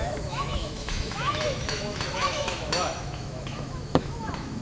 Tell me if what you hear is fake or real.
fake